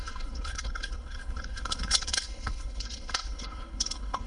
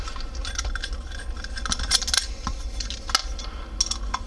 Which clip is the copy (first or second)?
first